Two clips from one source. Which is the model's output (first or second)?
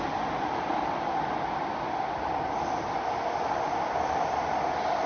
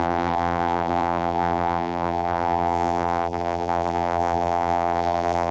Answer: second